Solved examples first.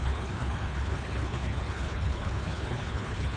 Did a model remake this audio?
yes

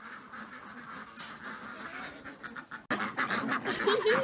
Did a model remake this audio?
no